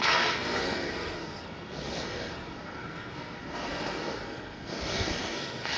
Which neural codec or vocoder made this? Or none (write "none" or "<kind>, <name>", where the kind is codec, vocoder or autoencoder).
codec, SNAC